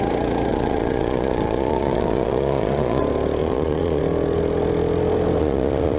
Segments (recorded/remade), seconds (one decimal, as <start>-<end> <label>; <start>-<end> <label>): 0.0-0.5 recorded; 0.5-3.0 remade; 3.0-3.4 recorded; 3.4-4.0 remade; 4.0-5.4 recorded; 5.4-6.0 remade